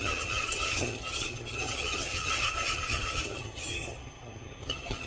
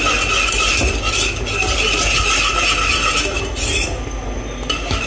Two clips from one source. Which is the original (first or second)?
second